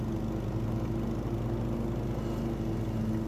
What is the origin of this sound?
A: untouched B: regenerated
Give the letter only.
A